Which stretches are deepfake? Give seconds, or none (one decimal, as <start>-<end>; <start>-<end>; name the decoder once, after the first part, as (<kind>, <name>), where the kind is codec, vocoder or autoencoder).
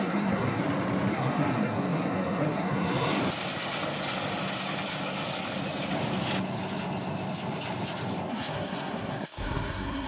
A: 0.0-0.6 (codec, SNAC); 1.1-3.2; 8.3-10.1